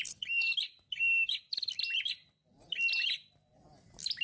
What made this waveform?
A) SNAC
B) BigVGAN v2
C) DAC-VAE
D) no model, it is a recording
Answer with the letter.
D